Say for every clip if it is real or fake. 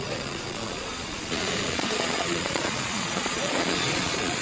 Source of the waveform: fake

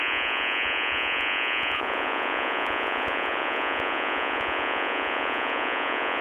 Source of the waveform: fake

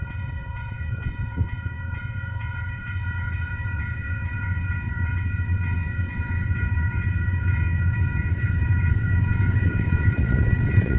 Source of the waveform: fake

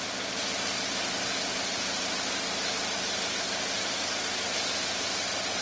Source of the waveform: real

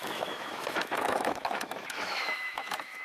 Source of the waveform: fake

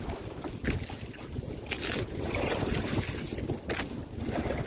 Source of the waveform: real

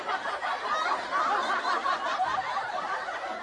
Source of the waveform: real